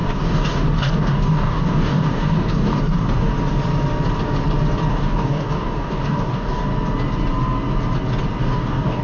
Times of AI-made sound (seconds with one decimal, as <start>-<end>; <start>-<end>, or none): 0.0-3.3; 4.9-6.7; 8.4-9.0